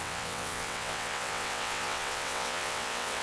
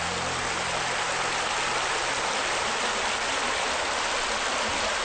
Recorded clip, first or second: second